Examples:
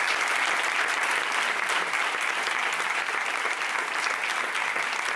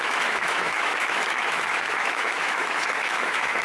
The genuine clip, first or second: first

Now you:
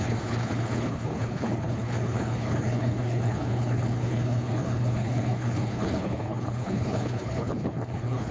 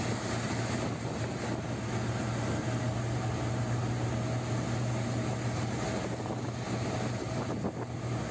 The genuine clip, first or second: second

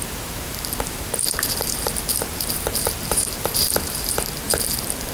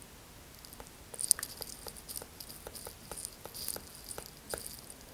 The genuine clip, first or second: second